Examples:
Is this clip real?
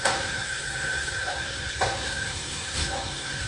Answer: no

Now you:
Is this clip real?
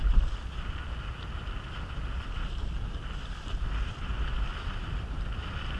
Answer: yes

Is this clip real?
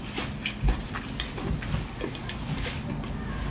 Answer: yes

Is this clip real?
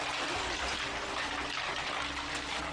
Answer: yes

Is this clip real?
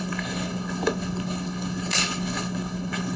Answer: no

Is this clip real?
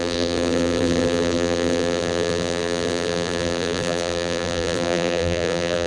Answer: no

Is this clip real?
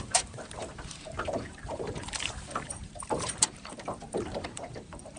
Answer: no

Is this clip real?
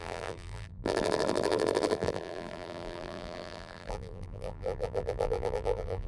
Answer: no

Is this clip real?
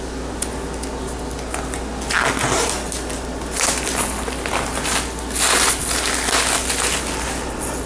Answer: yes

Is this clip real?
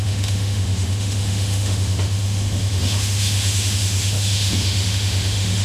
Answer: no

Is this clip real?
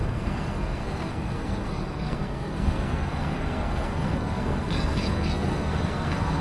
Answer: no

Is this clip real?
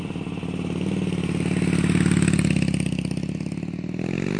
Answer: yes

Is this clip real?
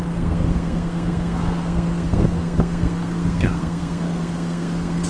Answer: no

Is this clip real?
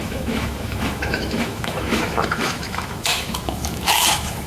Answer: no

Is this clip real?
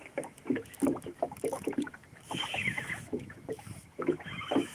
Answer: no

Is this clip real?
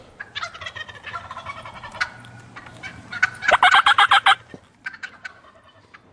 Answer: yes